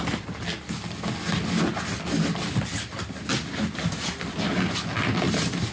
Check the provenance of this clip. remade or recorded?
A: recorded